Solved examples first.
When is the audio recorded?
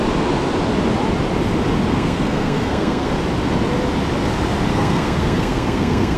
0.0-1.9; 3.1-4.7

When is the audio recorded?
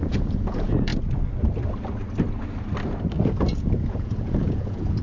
0.9-3.9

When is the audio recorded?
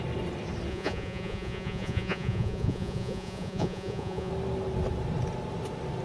0.0-0.7; 4.3-6.0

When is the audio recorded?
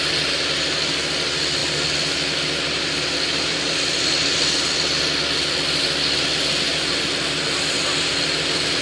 0.0-8.8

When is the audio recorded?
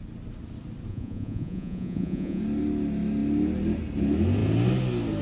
0.0-0.9; 2.4-5.2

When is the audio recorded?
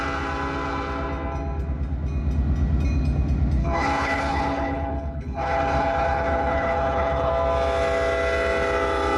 0.0-3.6; 7.3-9.2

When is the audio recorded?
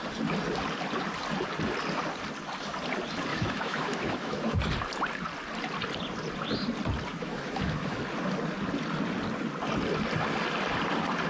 0.0-3.3; 4.6-7.1; 8.0-11.3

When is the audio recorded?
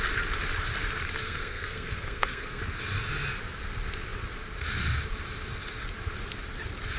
0.0-1.2; 2.6-7.0